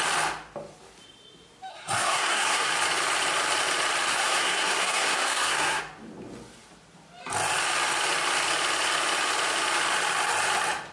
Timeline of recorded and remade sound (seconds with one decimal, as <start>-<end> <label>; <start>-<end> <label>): 0.0-1.7 recorded; 1.7-2.7 remade; 2.7-4.1 recorded; 4.1-5.8 remade; 5.8-10.9 recorded